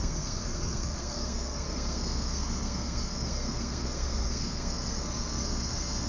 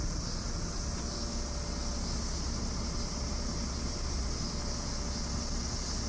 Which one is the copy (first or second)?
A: first